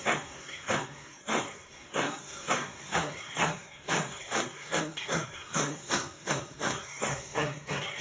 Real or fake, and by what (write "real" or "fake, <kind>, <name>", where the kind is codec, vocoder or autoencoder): fake, codec, SNAC